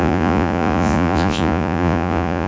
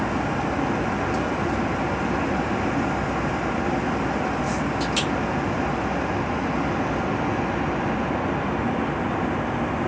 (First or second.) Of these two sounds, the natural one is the second